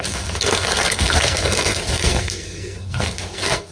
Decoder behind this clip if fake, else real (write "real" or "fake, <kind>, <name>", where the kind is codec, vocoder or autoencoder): fake, codec, SNAC